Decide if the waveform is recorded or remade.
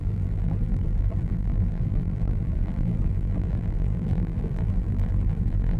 remade